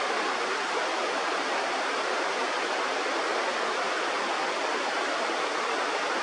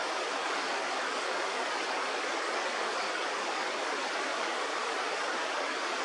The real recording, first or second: first